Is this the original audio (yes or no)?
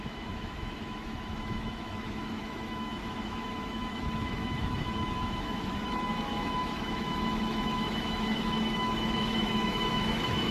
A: no